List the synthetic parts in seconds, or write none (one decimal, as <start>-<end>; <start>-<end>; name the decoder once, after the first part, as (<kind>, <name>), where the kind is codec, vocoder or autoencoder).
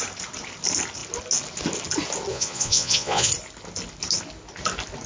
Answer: 2.3-3.3 (vocoder, Vocos)